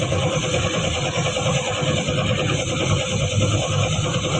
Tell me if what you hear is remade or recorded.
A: recorded